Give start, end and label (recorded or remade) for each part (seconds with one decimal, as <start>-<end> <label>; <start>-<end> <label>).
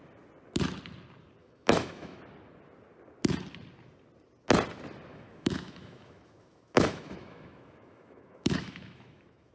0.0-1.4 recorded; 1.4-2.2 remade; 2.2-5.1 recorded; 5.1-9.5 remade